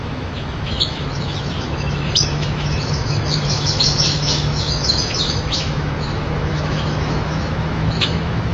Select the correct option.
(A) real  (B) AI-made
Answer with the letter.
B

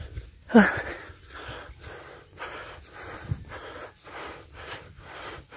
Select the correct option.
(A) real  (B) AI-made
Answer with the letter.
A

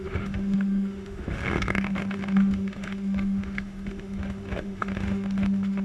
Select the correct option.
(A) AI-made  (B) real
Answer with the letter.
A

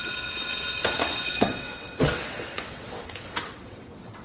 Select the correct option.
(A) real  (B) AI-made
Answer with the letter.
B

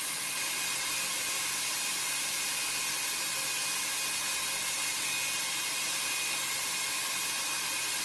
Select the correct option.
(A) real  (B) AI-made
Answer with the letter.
A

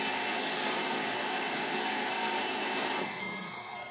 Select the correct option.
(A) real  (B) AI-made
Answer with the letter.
B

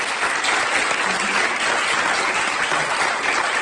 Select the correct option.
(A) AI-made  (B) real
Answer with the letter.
B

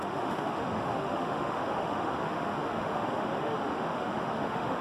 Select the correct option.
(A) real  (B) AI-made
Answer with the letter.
B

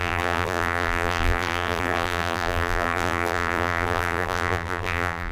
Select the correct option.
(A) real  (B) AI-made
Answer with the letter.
B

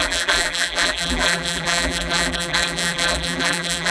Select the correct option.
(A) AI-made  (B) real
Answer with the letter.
A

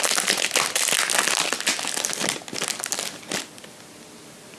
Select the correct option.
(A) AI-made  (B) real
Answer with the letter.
B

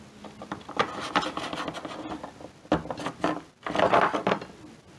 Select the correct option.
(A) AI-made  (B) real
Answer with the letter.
B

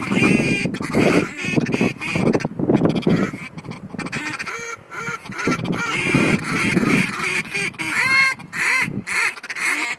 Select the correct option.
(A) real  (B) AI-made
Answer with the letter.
B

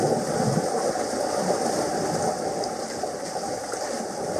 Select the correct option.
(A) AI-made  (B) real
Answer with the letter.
B